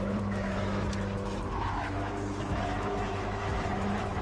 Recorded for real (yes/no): no